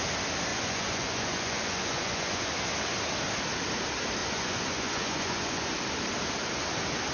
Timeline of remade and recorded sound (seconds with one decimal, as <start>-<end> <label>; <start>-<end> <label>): 0.0-0.5 recorded; 0.5-2.5 remade; 2.5-4.2 recorded; 4.2-5.7 remade; 5.7-7.1 recorded